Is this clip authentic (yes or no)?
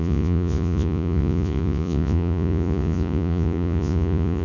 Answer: no